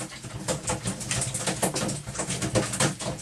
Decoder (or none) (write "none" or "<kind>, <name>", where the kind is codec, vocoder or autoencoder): none